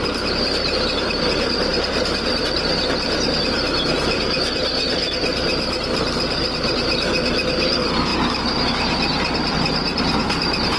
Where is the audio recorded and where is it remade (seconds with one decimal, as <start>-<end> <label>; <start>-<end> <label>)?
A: 0.0-8.1 remade; 8.1-9.5 recorded; 9.5-10.8 remade